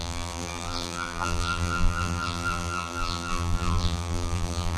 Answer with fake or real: fake